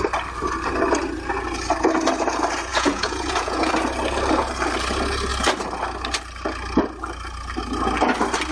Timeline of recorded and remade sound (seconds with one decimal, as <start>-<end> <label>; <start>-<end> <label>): 0.0-2.7 recorded; 2.7-3.7 remade; 3.7-8.5 recorded